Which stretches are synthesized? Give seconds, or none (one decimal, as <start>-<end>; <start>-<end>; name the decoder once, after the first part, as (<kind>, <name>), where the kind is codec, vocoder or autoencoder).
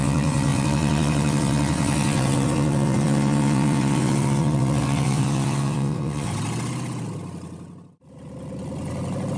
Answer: 0.0-6.3 (vocoder, WaveNeXt)